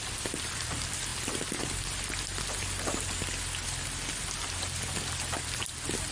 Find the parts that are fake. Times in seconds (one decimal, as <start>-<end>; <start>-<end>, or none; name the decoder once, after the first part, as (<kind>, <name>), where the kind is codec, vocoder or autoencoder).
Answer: none